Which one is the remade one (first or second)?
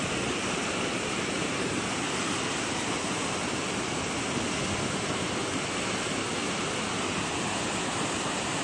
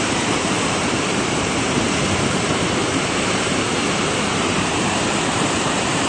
second